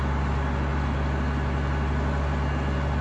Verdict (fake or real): real